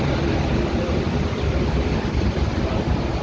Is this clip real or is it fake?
fake